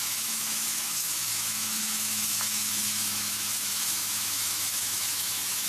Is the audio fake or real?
fake